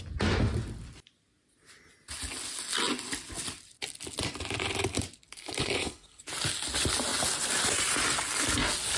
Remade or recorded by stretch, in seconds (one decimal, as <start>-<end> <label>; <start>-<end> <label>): 0.0-5.4 recorded; 5.4-6.2 remade; 6.2-9.0 recorded